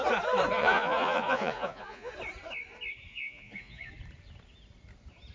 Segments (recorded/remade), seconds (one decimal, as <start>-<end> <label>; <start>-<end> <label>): 0.0-0.6 recorded; 0.6-2.1 remade; 2.1-3.1 recorded; 3.1-3.9 remade; 3.9-5.3 recorded